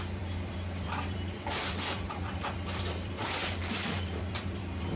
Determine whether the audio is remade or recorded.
remade